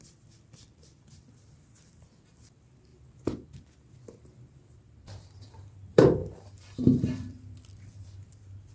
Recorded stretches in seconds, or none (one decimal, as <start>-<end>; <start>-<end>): none